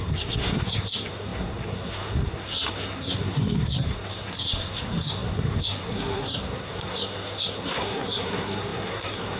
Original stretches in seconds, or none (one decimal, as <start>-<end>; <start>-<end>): none